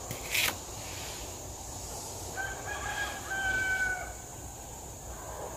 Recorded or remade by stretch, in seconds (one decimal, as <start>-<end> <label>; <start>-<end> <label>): 0.0-0.4 recorded; 0.4-3.8 remade; 3.8-4.3 recorded; 4.3-5.6 remade